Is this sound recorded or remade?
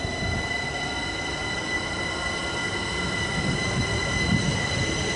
recorded